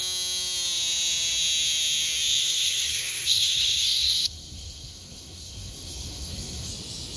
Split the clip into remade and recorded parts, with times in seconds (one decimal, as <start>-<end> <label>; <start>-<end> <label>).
0.0-2.4 recorded; 2.4-6.7 remade; 6.7-7.2 recorded